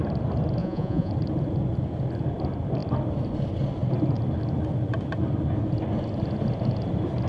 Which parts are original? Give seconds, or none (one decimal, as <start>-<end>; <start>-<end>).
0.0-0.6; 1.1-7.3